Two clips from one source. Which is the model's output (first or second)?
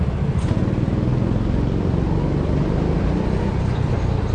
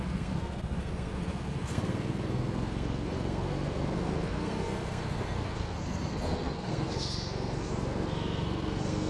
second